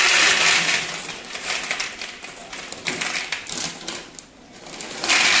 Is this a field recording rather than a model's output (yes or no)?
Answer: yes